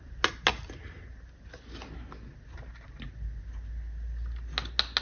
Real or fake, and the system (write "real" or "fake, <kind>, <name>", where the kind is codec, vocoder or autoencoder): real